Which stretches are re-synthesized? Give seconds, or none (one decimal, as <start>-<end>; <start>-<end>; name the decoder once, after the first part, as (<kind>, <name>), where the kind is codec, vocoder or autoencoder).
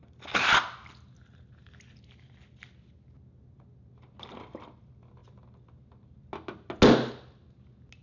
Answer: none